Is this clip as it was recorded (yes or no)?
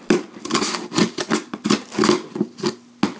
yes